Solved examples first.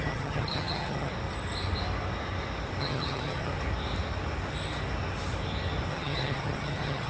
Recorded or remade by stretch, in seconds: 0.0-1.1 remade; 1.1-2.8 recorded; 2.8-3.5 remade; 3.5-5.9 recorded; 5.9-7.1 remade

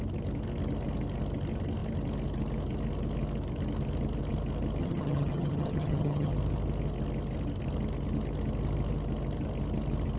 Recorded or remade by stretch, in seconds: 0.0-4.8 recorded; 4.8-6.3 remade; 6.3-10.2 recorded

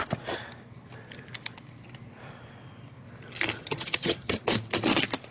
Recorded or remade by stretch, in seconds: 0.0-3.6 recorded; 3.6-4.4 remade; 4.4-5.3 recorded